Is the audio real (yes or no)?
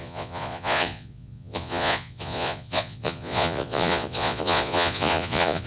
no